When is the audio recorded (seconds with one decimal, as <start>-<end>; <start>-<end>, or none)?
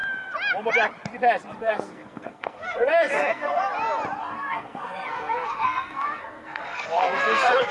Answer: 0.0-1.6; 3.7-4.2